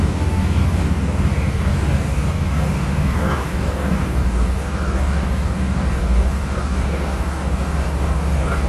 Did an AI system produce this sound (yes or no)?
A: yes